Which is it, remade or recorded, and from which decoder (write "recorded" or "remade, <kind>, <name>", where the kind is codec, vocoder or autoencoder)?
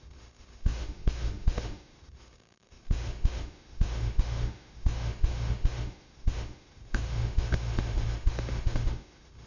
remade, autoencoder, DAC-VAE